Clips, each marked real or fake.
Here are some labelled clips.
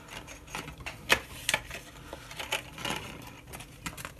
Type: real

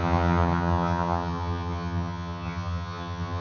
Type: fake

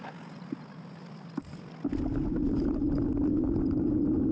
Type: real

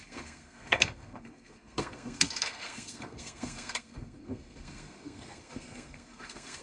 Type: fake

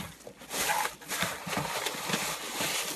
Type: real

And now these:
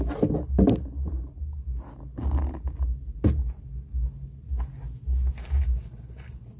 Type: real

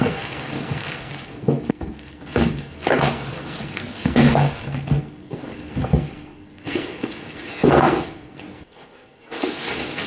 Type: fake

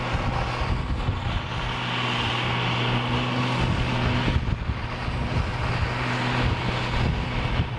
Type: real